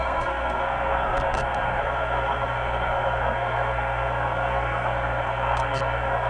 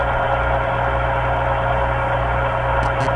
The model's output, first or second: first